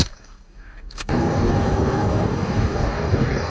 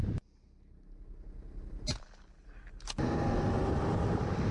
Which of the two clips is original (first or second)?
second